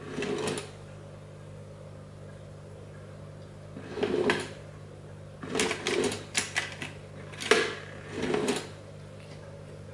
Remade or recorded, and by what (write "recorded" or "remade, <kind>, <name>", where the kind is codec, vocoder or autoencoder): recorded